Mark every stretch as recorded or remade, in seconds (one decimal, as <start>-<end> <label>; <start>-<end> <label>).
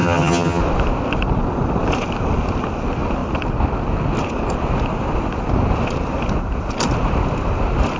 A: 0.0-0.6 remade; 0.6-8.0 recorded